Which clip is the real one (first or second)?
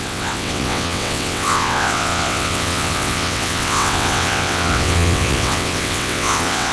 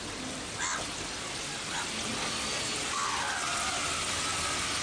second